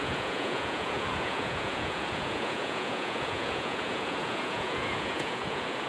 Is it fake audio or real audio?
fake